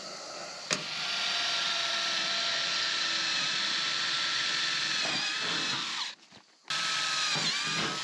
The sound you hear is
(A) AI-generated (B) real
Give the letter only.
B